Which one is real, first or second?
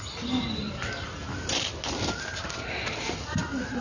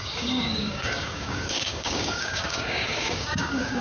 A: first